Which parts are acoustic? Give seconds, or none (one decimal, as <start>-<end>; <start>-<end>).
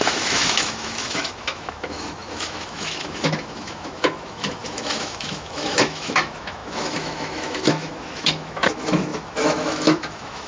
none